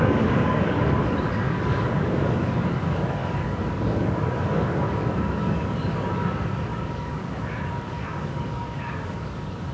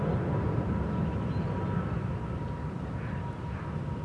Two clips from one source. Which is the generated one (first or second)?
first